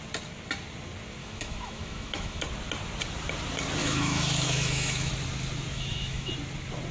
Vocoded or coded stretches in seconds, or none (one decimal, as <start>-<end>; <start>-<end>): 1.2-2.4; 3.8-5.1; 5.7-6.3